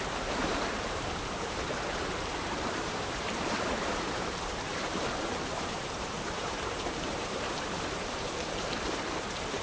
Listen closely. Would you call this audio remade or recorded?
remade